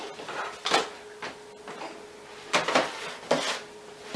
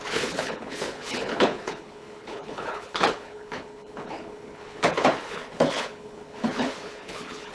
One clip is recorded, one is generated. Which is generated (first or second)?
second